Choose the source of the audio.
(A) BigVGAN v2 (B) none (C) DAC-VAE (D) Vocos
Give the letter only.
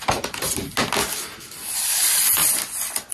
B